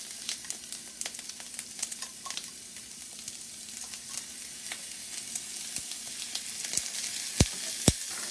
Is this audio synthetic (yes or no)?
no